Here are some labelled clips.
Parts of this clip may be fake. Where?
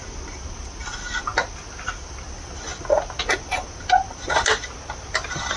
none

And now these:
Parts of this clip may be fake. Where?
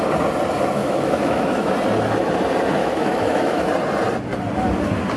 0.8-1.7 (autoencoder, DAC-VAE); 2.8-3.7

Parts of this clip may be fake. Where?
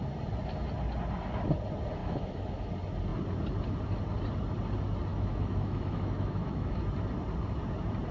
2.0-2.7 (autoencoder, DAC-VAE); 5.1-6.8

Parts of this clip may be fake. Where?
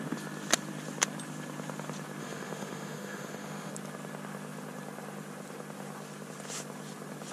2.2-3.7 (autoencoder, DAC-VAE)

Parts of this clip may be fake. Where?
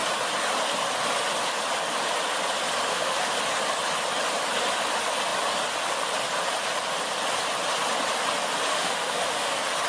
2.9-3.4 (autoencoder, DAC-VAE); 8.7-9.5